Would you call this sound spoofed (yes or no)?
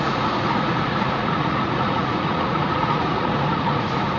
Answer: yes